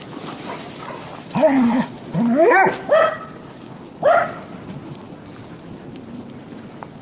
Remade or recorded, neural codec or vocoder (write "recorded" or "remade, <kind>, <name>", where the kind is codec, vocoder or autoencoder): recorded